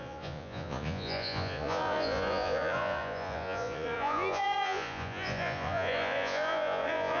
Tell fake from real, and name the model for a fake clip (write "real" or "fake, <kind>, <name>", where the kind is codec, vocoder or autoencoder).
fake, vocoder, Vocos